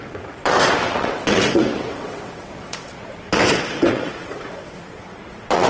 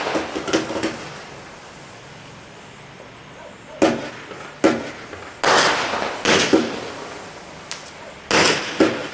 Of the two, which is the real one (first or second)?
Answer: second